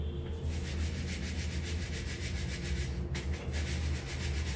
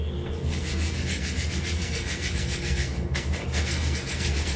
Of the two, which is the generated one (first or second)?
second